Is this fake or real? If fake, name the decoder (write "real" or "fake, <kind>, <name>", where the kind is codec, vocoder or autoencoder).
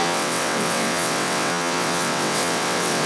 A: fake, vocoder, WaveNeXt